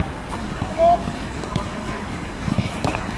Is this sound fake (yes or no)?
yes